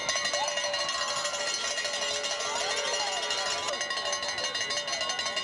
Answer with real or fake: real